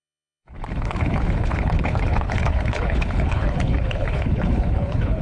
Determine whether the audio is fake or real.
fake